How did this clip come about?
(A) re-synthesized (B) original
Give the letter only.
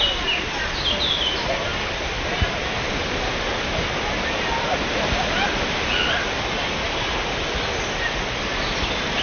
B